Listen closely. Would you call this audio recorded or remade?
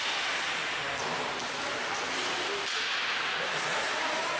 recorded